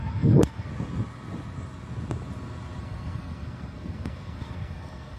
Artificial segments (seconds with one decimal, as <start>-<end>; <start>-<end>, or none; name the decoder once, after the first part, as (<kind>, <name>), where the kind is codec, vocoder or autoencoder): 0.0-0.7 (codec, SNAC); 2.8-5.2